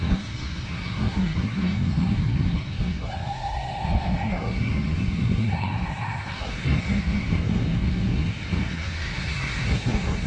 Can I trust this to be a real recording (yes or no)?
no